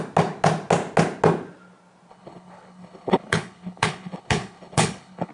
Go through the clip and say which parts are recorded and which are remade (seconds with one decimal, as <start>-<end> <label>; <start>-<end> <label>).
0.0-2.1 recorded; 2.1-5.3 remade